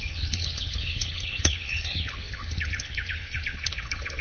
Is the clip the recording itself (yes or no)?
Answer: no